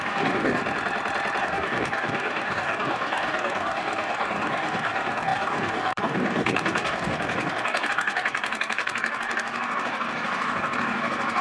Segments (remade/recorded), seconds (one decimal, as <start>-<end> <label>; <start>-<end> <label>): 0.0-0.6 remade; 0.6-1.4 recorded; 1.4-11.4 remade